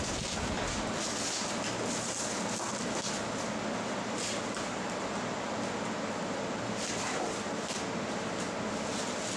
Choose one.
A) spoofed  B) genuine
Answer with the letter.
B